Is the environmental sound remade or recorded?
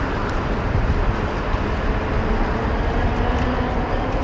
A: recorded